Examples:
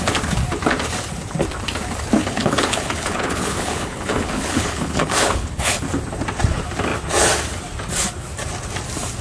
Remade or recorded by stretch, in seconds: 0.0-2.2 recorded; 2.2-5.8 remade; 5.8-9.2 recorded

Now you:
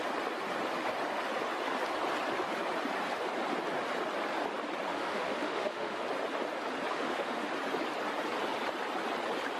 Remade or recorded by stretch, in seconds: 0.0-4.9 recorded; 4.9-6.0 remade; 6.0-6.9 recorded; 6.9-7.5 remade; 7.5-9.6 recorded

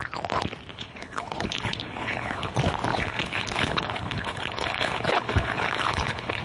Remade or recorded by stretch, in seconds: 0.0-0.7 recorded; 0.7-2.5 remade; 2.5-2.9 recorded; 2.9-6.4 remade

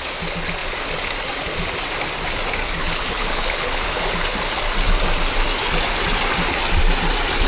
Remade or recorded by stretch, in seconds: 0.0-2.8 recorded; 2.8-3.9 remade; 3.9-7.5 recorded

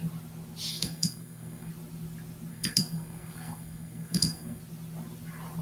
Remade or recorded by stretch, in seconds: 0.0-0.7 recorded; 0.7-1.7 remade; 1.7-2.5 recorded; 2.5-4.6 remade; 4.6-5.6 recorded

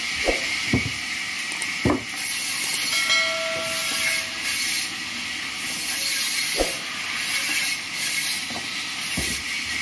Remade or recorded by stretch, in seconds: 0.0-9.8 recorded